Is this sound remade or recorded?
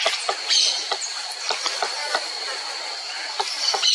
recorded